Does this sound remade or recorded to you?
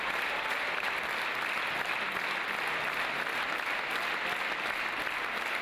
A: recorded